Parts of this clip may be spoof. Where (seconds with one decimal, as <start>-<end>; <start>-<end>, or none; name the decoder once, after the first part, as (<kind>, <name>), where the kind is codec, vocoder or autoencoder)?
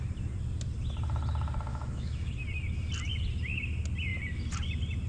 1.7-2.3 (autoencoder, DAC-VAE)